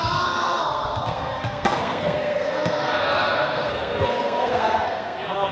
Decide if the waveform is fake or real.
fake